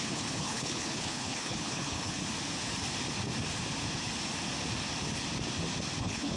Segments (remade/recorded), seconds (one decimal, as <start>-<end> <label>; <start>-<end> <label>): 0.0-2.2 remade; 2.2-6.0 recorded; 6.0-6.4 remade